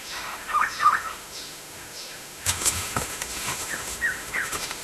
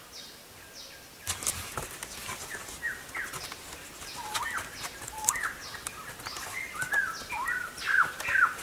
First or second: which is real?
second